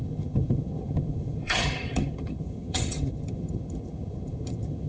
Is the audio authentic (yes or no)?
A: no